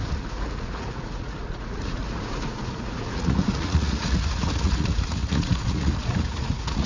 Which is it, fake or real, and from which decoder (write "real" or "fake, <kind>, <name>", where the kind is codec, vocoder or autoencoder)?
fake, vocoder, Vocos